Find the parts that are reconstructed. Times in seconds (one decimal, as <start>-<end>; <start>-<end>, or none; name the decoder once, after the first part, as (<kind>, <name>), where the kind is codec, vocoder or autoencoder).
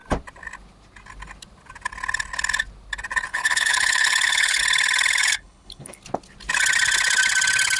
3.3-4.6 (codec, HILCodec); 5.2-6.0